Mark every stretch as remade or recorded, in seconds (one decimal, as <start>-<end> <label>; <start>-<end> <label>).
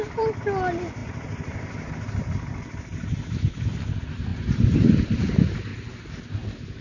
0.0-1.0 recorded; 1.0-1.7 remade; 1.7-4.3 recorded; 4.3-5.3 remade; 5.3-5.7 recorded; 5.7-6.3 remade; 6.3-6.8 recorded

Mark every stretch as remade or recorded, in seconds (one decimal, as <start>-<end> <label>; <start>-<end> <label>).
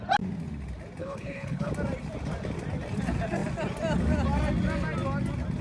0.0-1.0 recorded; 1.0-1.7 remade; 1.7-5.6 recorded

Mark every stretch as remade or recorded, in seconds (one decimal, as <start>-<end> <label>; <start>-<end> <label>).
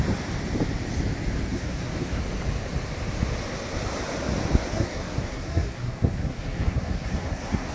0.0-1.5 recorded; 1.5-2.2 remade; 2.2-4.7 recorded; 4.7-7.7 remade